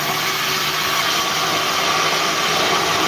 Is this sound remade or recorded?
recorded